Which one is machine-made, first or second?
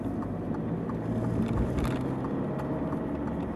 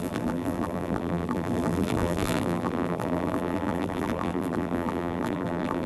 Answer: second